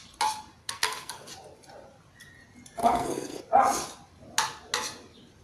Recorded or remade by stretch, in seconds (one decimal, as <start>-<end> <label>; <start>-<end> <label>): 0.0-0.6 recorded; 0.6-1.3 remade; 1.3-2.8 recorded; 2.8-3.4 remade; 3.4-5.4 recorded